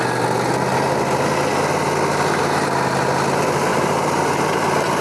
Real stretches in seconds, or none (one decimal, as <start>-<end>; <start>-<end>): 0.0-3.7